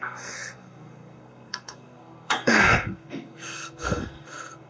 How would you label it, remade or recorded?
remade